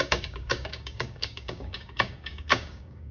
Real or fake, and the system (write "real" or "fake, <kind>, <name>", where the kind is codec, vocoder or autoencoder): fake, codec, DAC